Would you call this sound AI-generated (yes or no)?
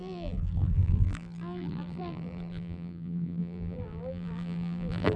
yes